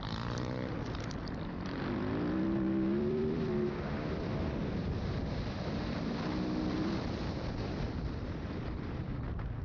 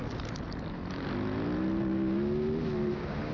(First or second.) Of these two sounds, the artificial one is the first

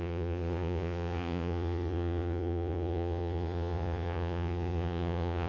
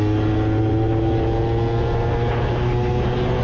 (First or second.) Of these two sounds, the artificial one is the first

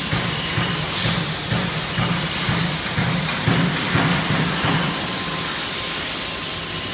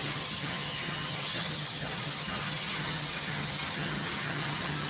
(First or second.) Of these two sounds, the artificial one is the second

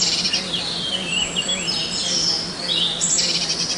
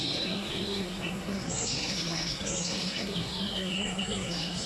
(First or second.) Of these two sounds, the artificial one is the second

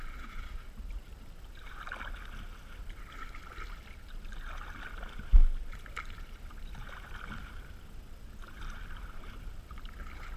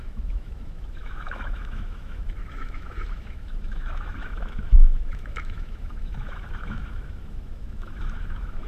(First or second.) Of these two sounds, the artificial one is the second